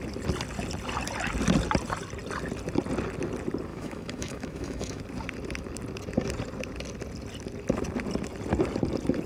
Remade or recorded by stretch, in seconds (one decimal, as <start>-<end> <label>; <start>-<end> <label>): 0.0-3.7 recorded; 3.7-5.0 remade; 5.0-9.3 recorded